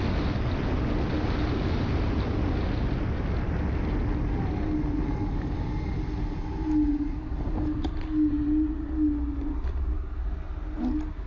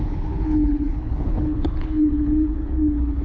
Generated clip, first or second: second